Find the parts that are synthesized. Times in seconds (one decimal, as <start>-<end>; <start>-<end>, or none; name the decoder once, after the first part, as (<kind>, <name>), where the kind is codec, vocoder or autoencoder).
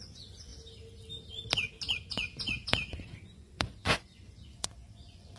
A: 0.0-0.5 (vocoder, Vocos); 2.0-5.4